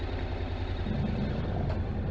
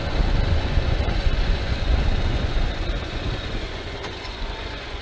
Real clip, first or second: first